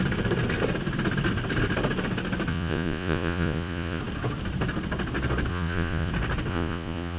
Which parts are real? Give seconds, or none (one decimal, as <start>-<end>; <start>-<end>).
0.0-2.5; 4.0-5.5; 6.1-6.5